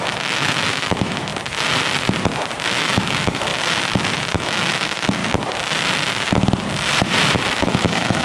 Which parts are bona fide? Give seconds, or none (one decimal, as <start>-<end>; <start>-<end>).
1.3-2.7; 3.5-4.3; 5.2-7.6